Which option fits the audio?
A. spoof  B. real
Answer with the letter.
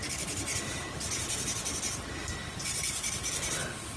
B